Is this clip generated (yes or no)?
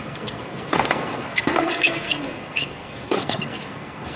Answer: yes